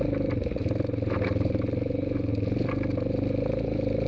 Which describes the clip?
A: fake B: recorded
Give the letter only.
B